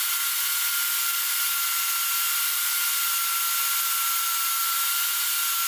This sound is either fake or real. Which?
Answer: real